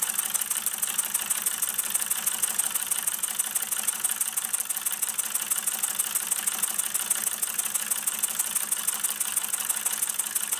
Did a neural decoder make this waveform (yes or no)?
no